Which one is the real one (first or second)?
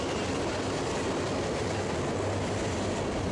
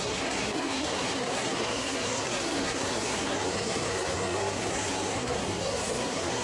first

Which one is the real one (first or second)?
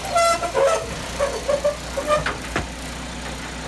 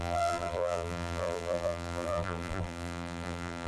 first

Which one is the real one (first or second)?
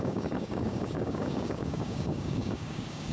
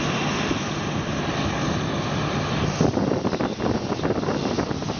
second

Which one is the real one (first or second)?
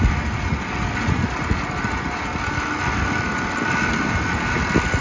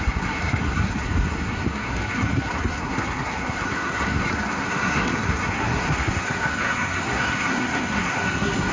first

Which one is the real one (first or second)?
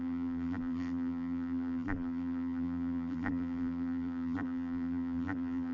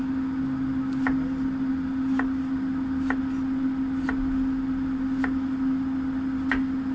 second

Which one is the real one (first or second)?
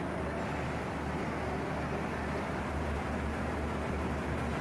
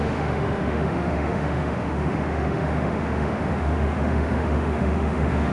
first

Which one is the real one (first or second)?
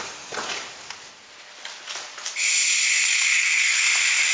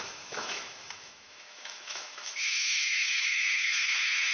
first